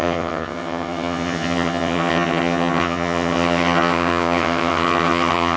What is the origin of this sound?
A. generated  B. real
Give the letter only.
A